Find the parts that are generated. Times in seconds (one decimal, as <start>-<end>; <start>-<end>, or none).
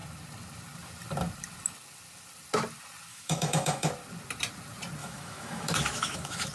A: 3.1-3.9; 5.0-6.5